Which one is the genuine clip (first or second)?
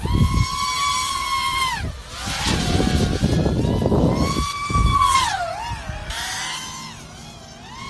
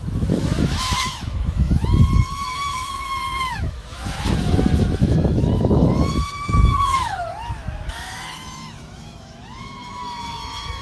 first